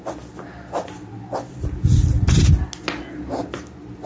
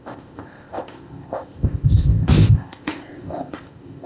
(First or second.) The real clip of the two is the first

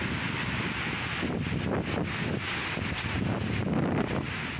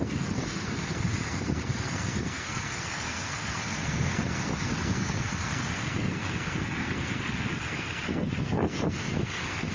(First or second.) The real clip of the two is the first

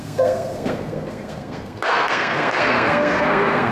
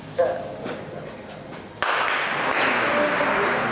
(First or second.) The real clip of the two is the second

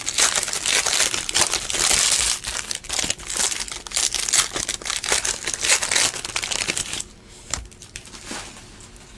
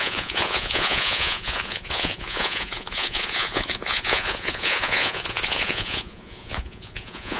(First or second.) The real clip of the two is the first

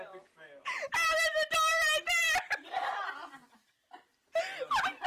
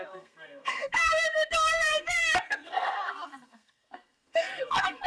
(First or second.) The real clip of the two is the first